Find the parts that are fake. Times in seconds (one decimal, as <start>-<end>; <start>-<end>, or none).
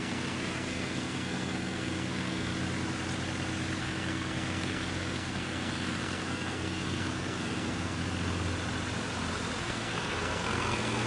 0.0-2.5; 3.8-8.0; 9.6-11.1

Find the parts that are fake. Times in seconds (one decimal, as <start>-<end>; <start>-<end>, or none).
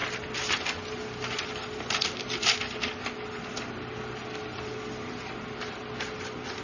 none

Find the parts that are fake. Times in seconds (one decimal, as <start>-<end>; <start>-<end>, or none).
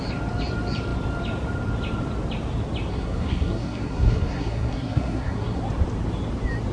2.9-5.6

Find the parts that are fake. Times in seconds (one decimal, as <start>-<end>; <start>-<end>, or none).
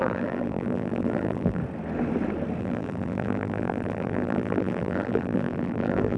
0.0-1.6; 2.6-6.2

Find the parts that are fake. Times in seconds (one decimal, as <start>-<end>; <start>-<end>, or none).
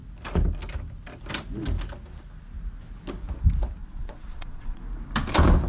3.8-4.8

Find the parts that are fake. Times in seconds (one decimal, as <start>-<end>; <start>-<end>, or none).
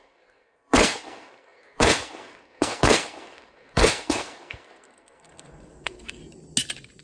0.0-6.2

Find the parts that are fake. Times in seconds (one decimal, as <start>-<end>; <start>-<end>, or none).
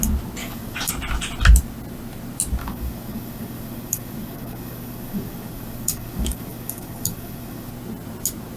0.4-0.9; 2.6-7.7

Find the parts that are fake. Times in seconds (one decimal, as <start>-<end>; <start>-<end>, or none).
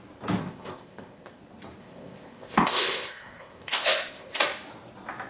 0.4-1.4; 1.8-4.4